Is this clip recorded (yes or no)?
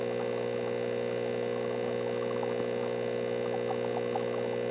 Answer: yes